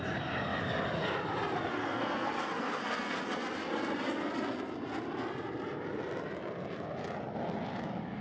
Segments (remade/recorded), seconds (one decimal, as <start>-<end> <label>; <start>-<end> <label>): 0.0-1.8 recorded; 1.8-3.2 remade; 3.2-8.2 recorded